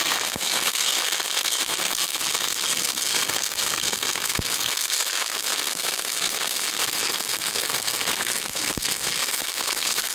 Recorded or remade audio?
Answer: remade